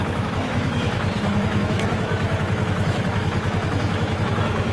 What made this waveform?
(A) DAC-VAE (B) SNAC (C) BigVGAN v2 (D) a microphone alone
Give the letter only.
A